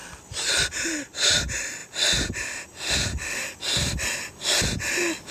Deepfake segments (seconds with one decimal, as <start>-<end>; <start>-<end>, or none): 0.0-1.3